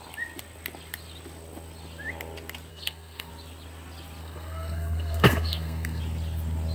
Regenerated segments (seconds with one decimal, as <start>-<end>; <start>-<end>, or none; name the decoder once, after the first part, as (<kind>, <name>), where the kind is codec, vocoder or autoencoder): 2.7-3.3 (codec, SNAC); 4.2-6.0